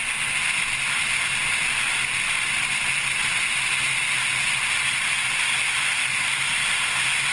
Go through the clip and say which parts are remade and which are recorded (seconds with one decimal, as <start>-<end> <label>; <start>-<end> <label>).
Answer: 0.0-7.3 recorded